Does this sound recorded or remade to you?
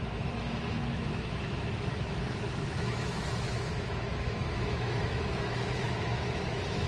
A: remade